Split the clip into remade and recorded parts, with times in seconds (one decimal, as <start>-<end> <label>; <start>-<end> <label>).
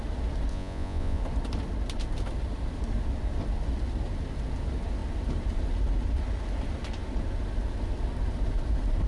0.0-0.5 recorded; 0.5-1.2 remade; 1.2-9.1 recorded